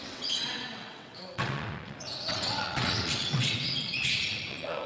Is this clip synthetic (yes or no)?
yes